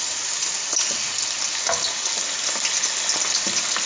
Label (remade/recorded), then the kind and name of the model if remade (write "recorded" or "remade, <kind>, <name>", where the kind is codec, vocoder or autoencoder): recorded